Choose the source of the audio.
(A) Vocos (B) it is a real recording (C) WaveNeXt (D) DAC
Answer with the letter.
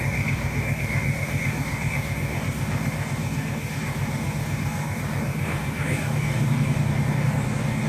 D